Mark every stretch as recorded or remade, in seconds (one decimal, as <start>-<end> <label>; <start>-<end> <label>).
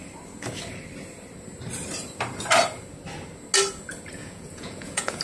0.0-4.2 recorded; 4.2-5.2 remade